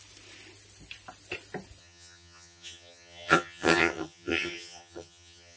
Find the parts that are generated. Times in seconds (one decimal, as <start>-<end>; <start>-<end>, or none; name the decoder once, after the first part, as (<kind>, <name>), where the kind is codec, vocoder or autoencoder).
1.8-5.6 (vocoder, HiFi-GAN)